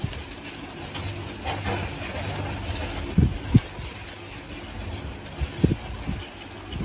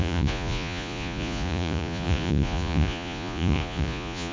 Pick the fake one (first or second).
second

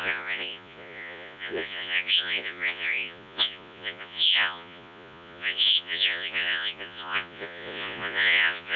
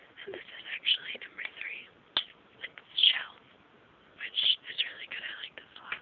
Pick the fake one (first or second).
first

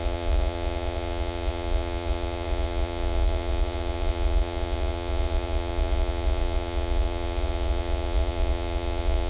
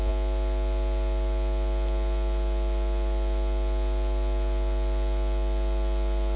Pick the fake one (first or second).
first